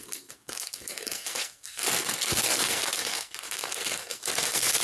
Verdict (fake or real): fake